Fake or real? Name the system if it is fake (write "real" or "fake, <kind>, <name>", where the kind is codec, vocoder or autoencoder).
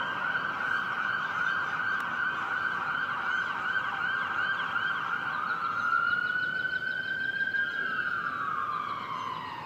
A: real